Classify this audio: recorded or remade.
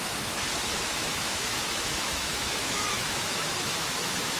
remade